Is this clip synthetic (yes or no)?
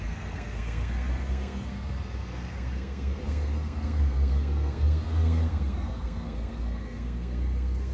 yes